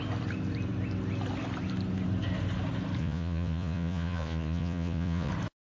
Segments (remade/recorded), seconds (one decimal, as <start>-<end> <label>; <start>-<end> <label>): 0.0-3.0 recorded; 3.0-5.3 remade; 5.3-5.7 recorded

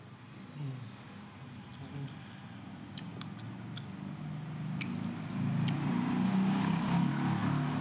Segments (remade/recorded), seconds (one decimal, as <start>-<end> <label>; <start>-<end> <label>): 0.0-7.8 recorded

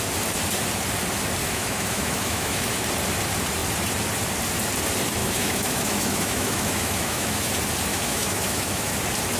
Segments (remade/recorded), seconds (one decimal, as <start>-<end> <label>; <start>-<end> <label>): 0.0-1.4 recorded; 1.4-2.9 remade; 2.9-5.2 recorded; 5.2-7.5 remade; 7.5-7.9 recorded; 7.9-8.9 remade; 8.9-9.4 recorded

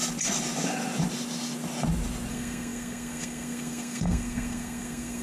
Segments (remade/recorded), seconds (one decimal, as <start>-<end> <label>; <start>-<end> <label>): 0.0-2.3 recorded; 2.3-5.2 remade

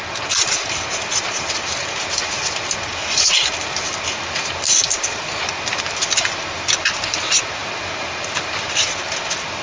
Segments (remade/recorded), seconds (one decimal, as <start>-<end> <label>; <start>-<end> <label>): 0.0-9.6 recorded

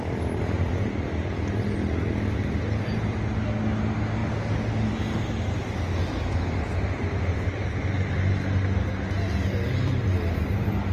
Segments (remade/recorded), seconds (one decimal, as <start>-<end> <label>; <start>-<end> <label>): 0.0-10.9 recorded

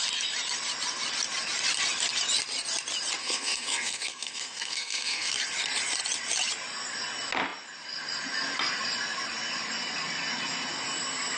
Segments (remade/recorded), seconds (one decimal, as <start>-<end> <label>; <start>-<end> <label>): 0.0-3.2 recorded; 3.2-5.3 remade; 5.3-11.4 recorded